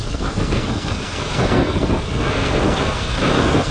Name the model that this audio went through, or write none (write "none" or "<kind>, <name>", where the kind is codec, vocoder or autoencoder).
codec, SNAC